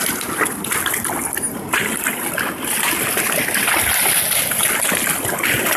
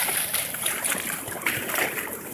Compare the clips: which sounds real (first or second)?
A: first